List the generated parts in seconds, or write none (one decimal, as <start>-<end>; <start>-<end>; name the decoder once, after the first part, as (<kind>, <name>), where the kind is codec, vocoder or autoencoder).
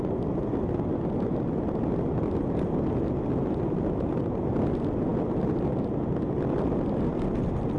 none